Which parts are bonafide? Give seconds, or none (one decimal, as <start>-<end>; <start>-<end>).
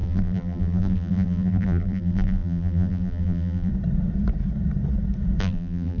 3.7-5.4